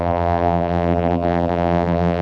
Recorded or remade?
remade